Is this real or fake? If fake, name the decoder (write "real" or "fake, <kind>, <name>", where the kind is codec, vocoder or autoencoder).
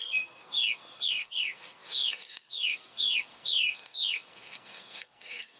fake, codec, SNAC